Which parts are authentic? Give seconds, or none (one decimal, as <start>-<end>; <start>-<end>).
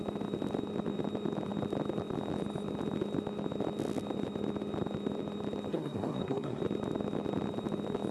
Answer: 0.0-5.7; 6.6-8.1